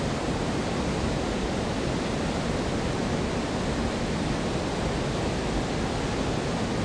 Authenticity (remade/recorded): recorded